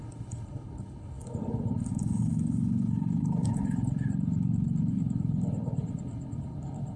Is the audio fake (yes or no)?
yes